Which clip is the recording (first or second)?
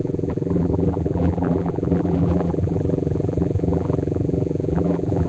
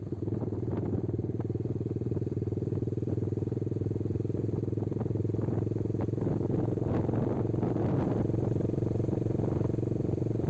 second